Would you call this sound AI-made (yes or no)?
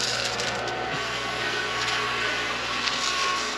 yes